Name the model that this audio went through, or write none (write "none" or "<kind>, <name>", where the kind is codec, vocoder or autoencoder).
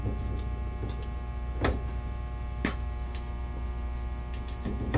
none